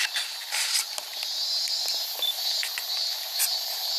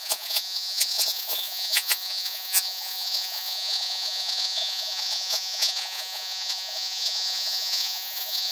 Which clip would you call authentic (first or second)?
first